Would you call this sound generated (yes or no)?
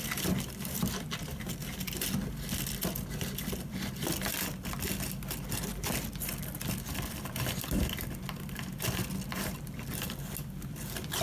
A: no